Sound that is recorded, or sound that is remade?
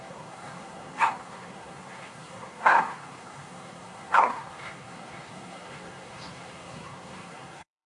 remade